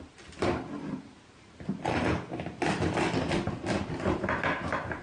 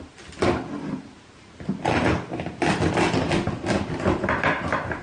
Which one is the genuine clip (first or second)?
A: second